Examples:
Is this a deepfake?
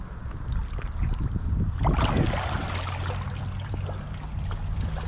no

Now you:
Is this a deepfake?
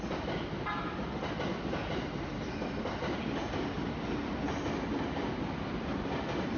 no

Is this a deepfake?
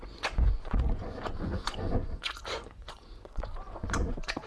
yes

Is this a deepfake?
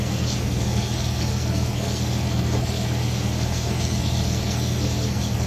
yes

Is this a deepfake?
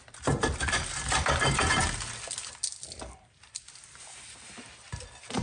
no